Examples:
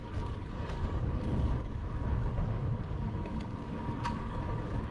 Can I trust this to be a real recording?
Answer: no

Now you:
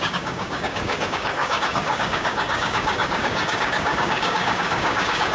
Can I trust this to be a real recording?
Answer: no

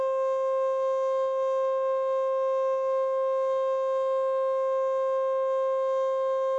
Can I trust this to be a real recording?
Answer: yes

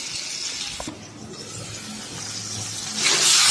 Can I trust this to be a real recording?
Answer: yes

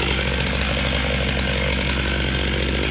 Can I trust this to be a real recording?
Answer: yes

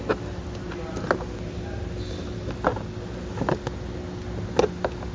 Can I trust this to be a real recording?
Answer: yes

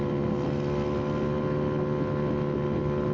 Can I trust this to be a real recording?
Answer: yes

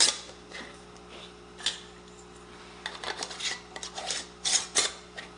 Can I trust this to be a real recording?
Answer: yes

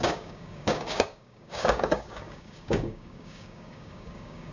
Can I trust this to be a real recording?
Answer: no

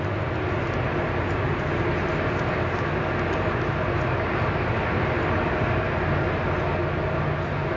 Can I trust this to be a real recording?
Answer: yes